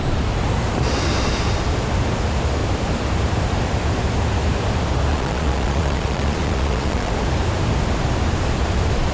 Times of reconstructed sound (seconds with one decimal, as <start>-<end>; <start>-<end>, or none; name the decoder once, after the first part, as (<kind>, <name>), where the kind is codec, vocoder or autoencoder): 5.1-7.1 (vocoder, Vocos)